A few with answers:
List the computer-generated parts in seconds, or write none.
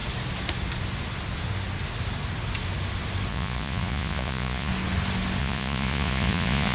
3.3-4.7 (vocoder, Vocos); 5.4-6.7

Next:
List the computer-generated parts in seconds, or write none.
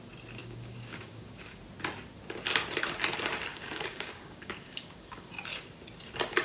0.4-1.6 (codec, DAC); 3.5-5.3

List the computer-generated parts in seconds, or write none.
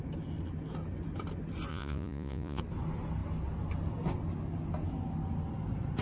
1.7-2.6 (vocoder, Vocos)